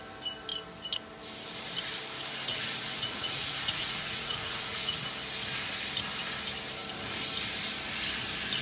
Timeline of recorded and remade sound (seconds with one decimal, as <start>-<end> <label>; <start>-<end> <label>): 0.0-2.5 recorded; 2.5-5.0 remade; 5.0-8.6 recorded